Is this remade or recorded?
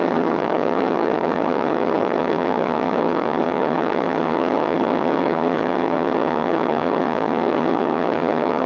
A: remade